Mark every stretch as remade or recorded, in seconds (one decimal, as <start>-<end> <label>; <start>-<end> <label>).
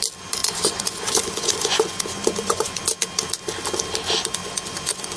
0.0-0.4 recorded; 0.4-2.8 remade; 2.8-4.4 recorded; 4.4-5.2 remade